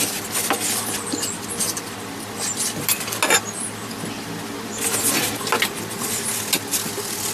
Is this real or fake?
real